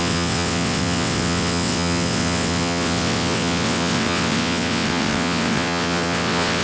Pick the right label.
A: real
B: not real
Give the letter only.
B